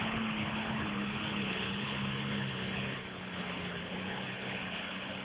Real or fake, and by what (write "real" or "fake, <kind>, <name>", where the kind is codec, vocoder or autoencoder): fake, codec, HILCodec